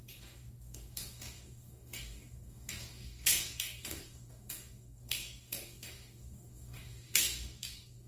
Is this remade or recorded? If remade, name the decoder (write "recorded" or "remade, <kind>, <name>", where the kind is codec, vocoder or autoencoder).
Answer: remade, codec, DAC